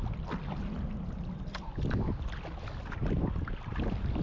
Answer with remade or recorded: recorded